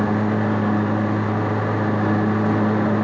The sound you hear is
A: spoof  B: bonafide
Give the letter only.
B